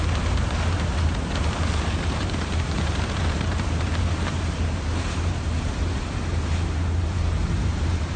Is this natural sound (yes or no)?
no